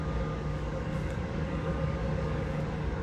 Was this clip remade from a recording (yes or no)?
yes